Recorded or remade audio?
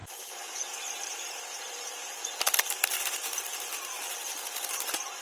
remade